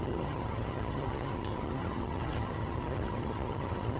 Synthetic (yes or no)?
yes